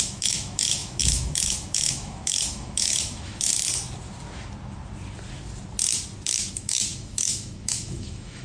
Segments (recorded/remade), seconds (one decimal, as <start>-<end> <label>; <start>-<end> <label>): 0.0-3.5 remade; 3.5-6.5 recorded; 6.5-8.4 remade